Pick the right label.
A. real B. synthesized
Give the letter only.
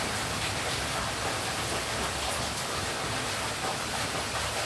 A